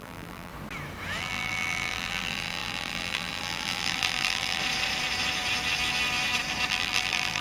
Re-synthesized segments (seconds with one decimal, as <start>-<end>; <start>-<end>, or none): 0.0-0.5; 1.2-4.6; 6.7-7.4